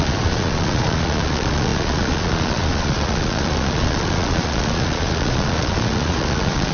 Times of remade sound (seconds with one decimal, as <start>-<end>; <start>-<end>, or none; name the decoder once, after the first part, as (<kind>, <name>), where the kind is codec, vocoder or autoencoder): 0.0-6.7 (vocoder, Vocos)

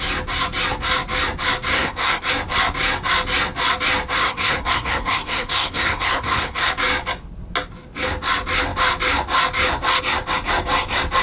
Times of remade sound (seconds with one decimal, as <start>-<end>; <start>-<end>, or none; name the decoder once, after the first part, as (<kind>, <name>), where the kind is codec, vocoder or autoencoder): 1.7-2.3 (codec, SNAC); 4.2-6.7

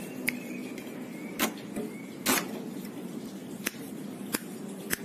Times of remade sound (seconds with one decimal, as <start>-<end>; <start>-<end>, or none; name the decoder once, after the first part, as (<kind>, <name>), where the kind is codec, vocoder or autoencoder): 0.0-0.6 (vocoder, BigVGAN v2); 3.6-5.0

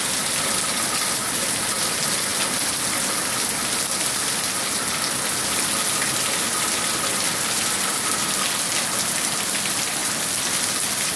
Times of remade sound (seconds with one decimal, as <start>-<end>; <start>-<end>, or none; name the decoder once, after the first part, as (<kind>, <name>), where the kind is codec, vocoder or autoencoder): none